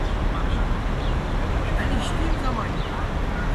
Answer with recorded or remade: recorded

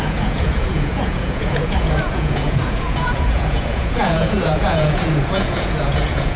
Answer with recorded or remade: remade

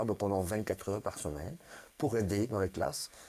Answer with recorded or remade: remade